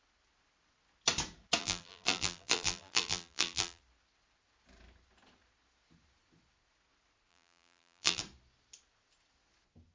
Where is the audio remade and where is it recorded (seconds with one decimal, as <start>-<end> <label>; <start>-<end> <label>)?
0.0-1.6 recorded; 1.6-3.8 remade; 3.8-7.3 recorded; 7.3-8.2 remade; 8.2-9.9 recorded